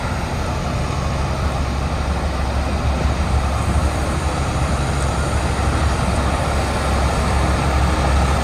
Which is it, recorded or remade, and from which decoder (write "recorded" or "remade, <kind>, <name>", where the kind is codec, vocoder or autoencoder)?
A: recorded